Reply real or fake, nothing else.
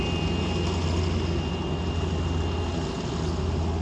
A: real